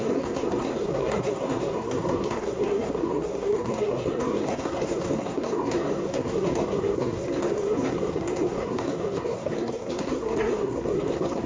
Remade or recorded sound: remade